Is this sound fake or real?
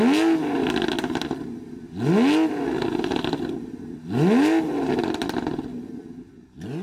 real